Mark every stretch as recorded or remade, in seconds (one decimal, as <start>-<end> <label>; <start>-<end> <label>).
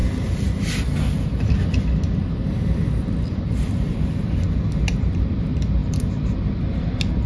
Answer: 0.0-7.3 recorded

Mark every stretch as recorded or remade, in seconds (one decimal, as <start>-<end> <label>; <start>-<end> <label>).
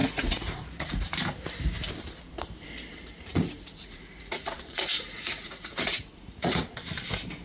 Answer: 0.0-1.1 remade; 1.1-3.3 recorded; 3.3-6.6 remade; 6.6-7.4 recorded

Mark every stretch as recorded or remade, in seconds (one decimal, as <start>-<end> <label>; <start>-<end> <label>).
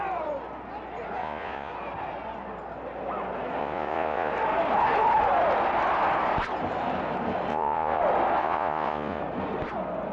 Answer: 0.0-1.2 recorded; 1.2-1.7 remade; 1.7-3.6 recorded; 3.6-4.3 remade; 4.3-7.5 recorded; 7.5-8.0 remade; 8.0-8.4 recorded; 8.4-9.2 remade; 9.2-10.1 recorded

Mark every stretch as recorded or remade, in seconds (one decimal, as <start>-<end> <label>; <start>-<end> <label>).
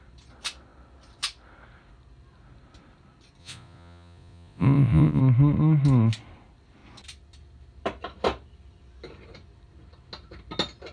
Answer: 0.0-3.4 recorded; 3.4-5.2 remade; 5.2-10.9 recorded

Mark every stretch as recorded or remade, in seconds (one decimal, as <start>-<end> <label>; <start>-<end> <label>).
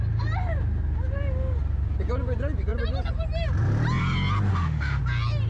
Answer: 0.0-4.5 recorded; 4.5-5.0 remade; 5.0-5.5 recorded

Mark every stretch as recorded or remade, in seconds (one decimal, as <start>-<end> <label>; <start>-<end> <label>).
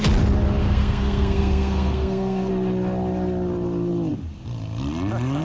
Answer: 0.0-0.6 recorded; 0.6-2.5 remade; 2.5-5.4 recorded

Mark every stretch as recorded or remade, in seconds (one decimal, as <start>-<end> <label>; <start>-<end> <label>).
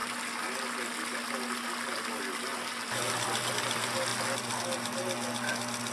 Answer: 0.0-5.9 recorded